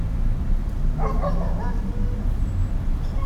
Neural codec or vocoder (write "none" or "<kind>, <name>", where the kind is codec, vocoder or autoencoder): none